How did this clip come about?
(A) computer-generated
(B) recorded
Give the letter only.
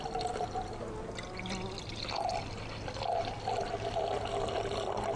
B